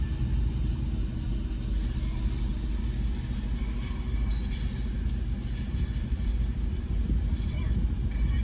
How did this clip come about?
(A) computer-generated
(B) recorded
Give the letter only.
B